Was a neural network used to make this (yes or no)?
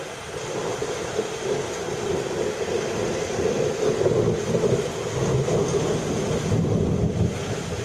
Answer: no